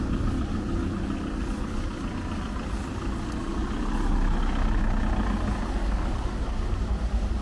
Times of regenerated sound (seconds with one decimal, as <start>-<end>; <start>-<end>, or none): 5.8-6.4